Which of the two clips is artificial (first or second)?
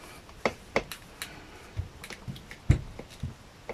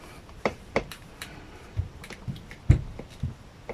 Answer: second